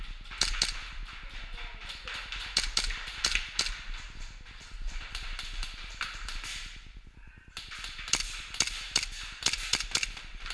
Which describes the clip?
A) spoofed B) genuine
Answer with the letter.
B